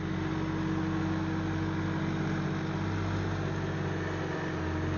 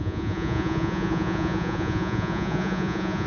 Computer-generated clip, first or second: second